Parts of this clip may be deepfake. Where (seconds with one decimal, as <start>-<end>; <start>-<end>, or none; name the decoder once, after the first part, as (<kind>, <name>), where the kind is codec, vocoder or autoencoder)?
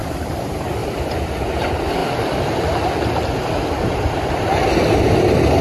0.8-1.4 (vocoder, BigVGAN v2); 2.0-5.6